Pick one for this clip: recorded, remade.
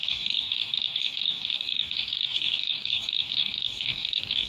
remade